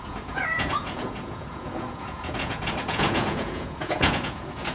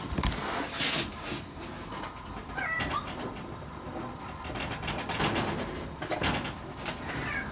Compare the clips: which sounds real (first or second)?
second